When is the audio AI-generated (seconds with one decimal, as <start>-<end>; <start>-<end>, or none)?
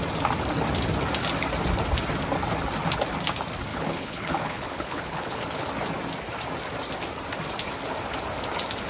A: 3.7-5.7